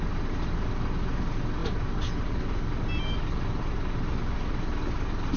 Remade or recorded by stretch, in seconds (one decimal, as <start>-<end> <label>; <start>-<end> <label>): 0.0-5.4 recorded